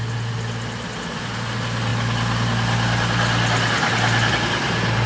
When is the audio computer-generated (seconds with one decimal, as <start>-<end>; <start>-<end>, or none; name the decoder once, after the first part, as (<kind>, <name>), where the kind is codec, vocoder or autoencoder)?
none